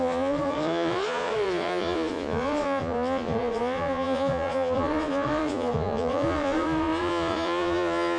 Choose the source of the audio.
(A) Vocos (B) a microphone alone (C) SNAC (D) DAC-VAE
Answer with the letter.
A